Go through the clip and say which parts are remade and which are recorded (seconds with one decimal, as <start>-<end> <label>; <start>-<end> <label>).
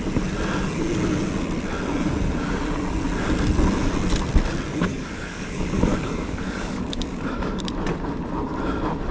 0.0-4.9 recorded; 4.9-7.6 remade; 7.6-9.1 recorded